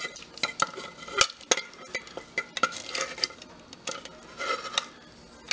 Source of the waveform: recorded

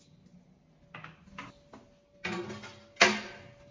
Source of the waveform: recorded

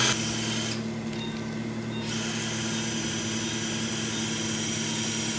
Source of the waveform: recorded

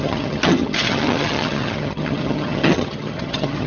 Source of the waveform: remade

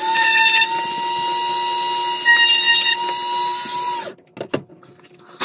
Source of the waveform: recorded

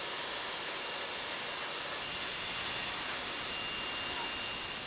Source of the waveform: recorded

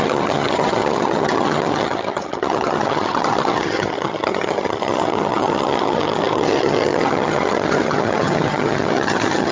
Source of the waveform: remade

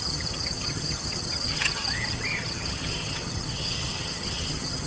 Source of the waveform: remade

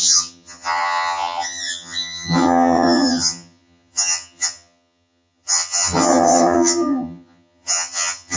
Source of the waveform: remade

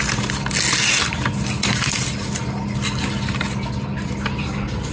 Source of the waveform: recorded